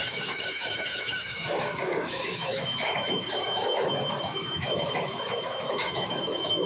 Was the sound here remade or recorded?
remade